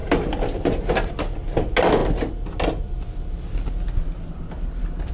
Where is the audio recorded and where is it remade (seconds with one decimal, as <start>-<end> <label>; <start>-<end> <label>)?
0.0-5.1 recorded